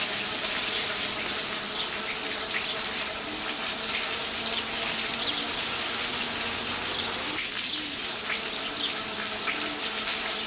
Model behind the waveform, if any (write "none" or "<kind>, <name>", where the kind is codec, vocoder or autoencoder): none